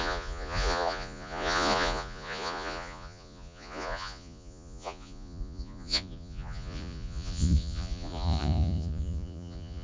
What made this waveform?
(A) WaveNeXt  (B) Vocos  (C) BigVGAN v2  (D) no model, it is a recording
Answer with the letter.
B